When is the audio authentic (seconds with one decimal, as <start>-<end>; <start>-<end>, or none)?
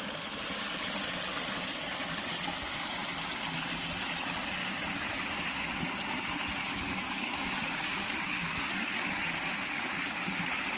0.0-4.6; 5.2-6.7; 9.3-10.8